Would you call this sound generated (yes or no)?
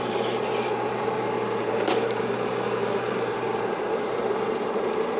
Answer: yes